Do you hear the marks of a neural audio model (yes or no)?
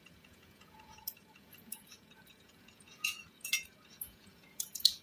yes